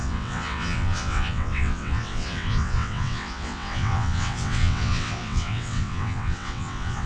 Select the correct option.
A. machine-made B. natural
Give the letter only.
A